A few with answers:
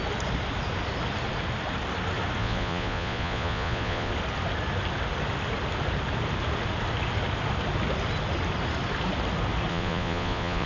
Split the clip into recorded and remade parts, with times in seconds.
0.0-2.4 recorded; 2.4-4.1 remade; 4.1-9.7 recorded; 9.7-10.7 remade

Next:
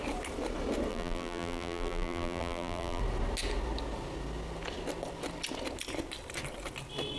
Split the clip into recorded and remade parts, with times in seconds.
0.0-0.9 recorded; 0.9-3.0 remade; 3.0-7.2 recorded

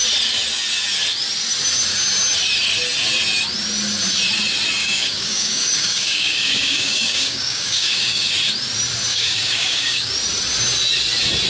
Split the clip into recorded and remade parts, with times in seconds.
0.0-4.8 recorded; 4.8-8.3 remade; 8.3-9.1 recorded; 9.1-10.1 remade; 10.1-11.5 recorded

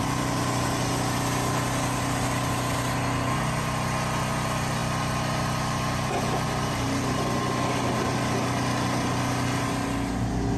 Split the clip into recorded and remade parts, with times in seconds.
0.0-10.6 recorded

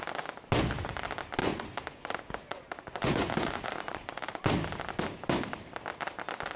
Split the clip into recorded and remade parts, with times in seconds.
0.0-1.4 recorded; 1.4-4.4 remade; 4.4-6.6 recorded

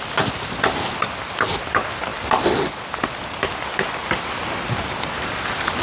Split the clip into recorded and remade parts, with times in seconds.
0.0-5.8 recorded

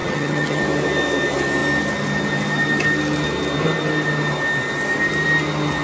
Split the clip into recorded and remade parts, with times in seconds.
0.0-0.6 remade; 0.6-5.8 recorded